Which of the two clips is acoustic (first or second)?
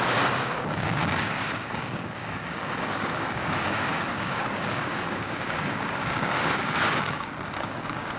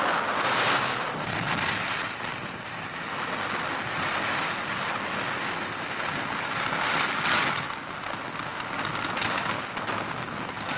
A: second